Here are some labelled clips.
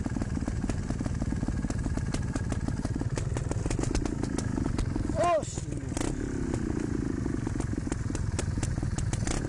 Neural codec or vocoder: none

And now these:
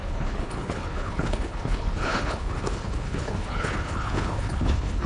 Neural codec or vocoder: codec, HILCodec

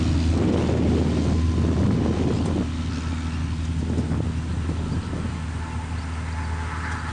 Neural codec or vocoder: none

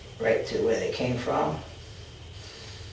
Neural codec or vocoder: none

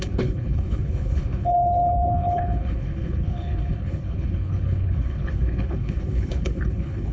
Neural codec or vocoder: codec, HILCodec